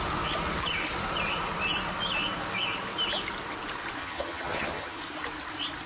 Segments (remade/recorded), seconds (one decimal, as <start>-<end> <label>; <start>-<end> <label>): 0.0-4.0 recorded; 4.0-5.0 remade; 5.0-5.9 recorded

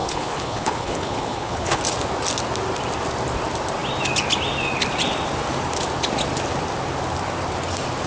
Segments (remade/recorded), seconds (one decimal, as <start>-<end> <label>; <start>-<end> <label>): 0.0-1.8 remade; 1.8-8.1 recorded

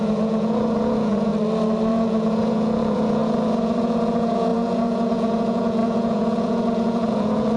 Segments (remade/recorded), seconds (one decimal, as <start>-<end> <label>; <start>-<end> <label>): 0.0-1.3 remade; 1.3-1.9 recorded; 1.9-7.6 remade

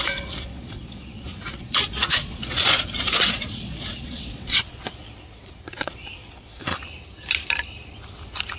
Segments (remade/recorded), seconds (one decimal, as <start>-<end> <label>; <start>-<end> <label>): 0.0-6.7 remade; 6.7-8.6 recorded

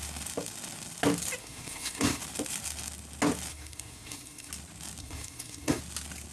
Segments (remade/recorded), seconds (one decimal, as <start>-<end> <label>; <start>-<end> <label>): 0.0-1.4 recorded; 1.4-2.2 remade; 2.2-3.5 recorded; 3.5-4.5 remade; 4.5-5.0 recorded; 5.0-5.8 remade; 5.8-6.3 recorded

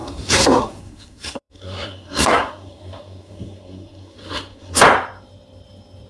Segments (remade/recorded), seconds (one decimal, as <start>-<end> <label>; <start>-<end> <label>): 0.0-4.8 remade; 4.8-6.1 recorded

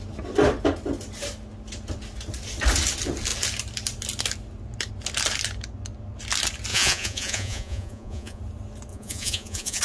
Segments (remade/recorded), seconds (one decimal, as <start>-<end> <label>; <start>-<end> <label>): 0.0-6.7 recorded; 6.7-8.4 remade; 8.4-8.9 recorded; 8.9-9.8 remade